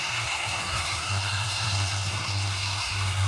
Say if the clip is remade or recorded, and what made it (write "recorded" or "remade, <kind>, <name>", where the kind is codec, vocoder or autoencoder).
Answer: remade, codec, SNAC